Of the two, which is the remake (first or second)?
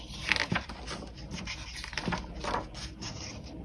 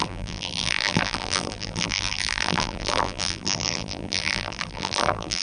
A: second